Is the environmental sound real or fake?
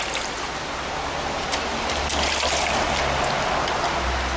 real